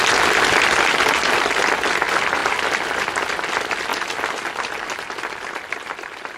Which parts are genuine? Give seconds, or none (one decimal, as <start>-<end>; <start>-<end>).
0.0-6.4